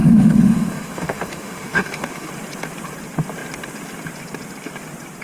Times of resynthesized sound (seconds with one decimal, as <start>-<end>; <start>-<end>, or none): 0.0-2.3